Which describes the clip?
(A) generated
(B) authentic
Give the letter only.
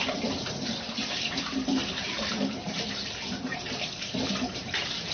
A